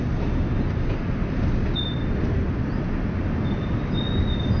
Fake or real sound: real